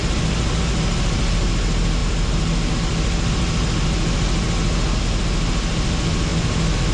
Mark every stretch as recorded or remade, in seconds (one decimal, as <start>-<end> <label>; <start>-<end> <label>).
0.0-6.9 recorded